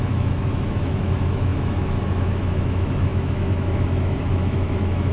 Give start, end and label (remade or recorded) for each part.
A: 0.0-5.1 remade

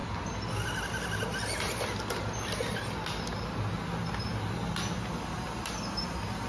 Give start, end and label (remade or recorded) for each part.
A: 0.0-6.5 recorded

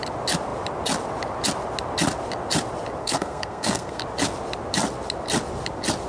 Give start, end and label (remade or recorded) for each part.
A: 0.0-3.0 recorded; 3.0-4.0 remade; 4.0-6.1 recorded

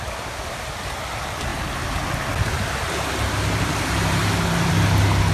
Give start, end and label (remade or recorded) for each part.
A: 0.0-5.3 recorded